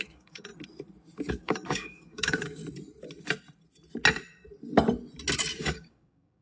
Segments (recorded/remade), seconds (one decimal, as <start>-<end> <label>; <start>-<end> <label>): 0.0-0.5 remade; 0.5-1.3 recorded; 1.3-2.6 remade; 2.6-5.6 recorded; 5.6-6.4 remade